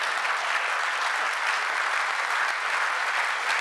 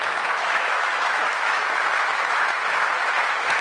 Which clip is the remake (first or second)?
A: second